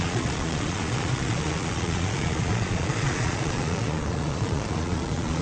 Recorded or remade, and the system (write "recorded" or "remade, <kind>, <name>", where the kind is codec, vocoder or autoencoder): remade, vocoder, Vocos